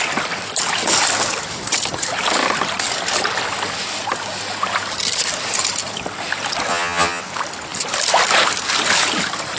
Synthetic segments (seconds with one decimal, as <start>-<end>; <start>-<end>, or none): 6.7-7.2